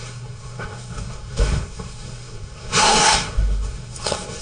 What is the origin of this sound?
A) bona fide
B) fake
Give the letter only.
B